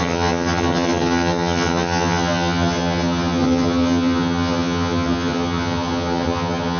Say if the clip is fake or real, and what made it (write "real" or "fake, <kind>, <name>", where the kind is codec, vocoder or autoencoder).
fake, vocoder, HiFi-GAN